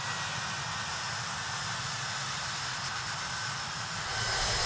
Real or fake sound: real